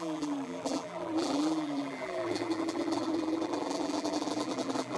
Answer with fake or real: fake